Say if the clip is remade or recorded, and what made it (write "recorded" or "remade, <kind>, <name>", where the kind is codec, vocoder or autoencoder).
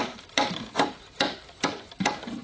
remade, vocoder, BigVGAN v2